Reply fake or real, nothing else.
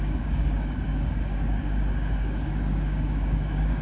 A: fake